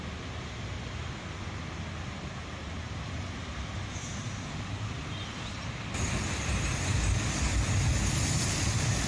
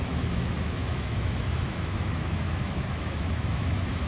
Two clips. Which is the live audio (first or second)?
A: first